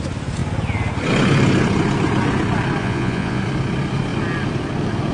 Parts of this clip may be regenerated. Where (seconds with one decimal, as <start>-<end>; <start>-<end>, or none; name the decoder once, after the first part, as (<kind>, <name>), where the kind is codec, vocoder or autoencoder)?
2.8-3.4 (vocoder, Vocos)